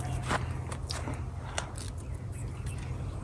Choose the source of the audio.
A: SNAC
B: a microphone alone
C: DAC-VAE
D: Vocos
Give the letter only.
B